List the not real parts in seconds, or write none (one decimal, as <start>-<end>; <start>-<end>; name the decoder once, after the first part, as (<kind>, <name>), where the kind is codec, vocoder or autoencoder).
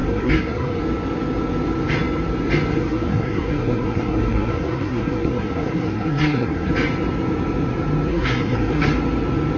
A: 0.0-0.8 (codec, SNAC); 2.7-6.7; 8.1-8.9